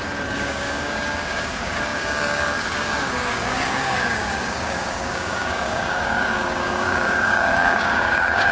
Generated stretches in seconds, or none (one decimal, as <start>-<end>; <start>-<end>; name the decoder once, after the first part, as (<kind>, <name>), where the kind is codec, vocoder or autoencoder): 0.0-8.5 (codec, DAC)

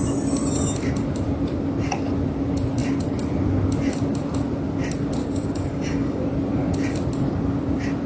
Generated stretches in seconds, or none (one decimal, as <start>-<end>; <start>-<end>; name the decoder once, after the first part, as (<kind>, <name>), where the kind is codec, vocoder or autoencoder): 5.2-6.2 (codec, DAC)

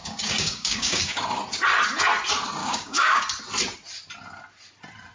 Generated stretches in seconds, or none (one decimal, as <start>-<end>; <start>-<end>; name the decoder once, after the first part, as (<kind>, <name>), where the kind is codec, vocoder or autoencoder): 0.0-1.2 (codec, DAC); 2.6-3.2

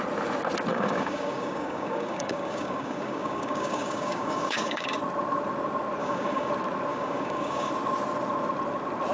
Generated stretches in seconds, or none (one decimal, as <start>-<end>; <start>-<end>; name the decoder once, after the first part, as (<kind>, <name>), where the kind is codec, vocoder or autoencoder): 0.7-5.0 (codec, DAC); 6.0-6.5; 6.9-7.7

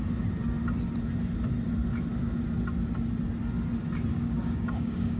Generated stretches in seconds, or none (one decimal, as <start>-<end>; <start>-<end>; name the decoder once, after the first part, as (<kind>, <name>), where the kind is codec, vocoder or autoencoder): 4.1-5.2 (codec, DAC)

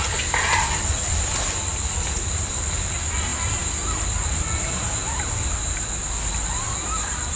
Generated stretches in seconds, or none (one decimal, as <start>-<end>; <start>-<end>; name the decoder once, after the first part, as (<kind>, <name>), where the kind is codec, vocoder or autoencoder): none

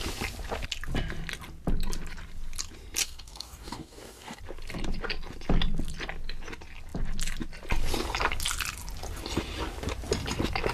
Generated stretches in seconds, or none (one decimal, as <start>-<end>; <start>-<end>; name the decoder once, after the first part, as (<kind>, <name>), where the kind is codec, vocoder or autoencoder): 3.0-4.4 (codec, DAC)

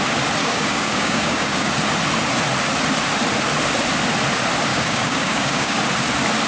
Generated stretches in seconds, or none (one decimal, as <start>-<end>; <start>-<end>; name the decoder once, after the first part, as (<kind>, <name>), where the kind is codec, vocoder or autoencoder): 0.4-1.7 (codec, DAC); 4.7-5.8